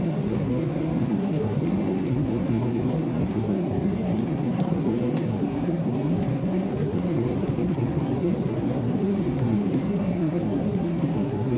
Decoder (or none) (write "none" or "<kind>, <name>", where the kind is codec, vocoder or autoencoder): codec, SNAC